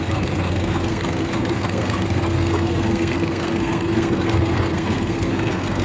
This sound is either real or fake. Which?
fake